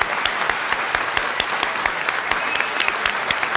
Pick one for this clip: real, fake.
real